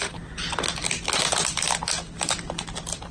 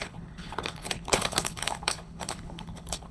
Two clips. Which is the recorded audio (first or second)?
first